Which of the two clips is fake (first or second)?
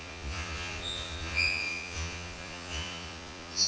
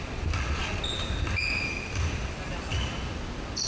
first